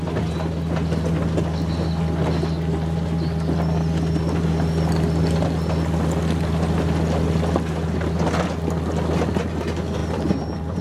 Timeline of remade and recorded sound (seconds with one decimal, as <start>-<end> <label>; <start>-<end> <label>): 0.0-10.0 recorded; 10.0-10.8 remade